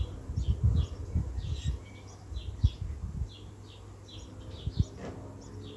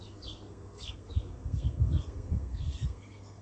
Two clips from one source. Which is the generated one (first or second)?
second